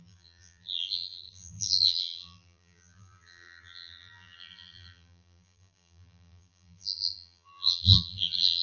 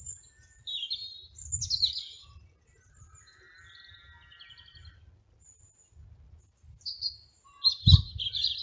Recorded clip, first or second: second